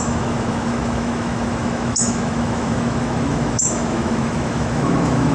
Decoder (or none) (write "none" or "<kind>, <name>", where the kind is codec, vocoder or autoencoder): autoencoder, DAC-VAE